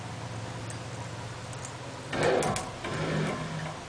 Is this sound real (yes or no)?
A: yes